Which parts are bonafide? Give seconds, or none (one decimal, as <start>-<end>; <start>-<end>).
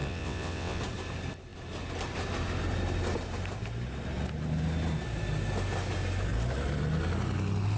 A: 0.8-7.8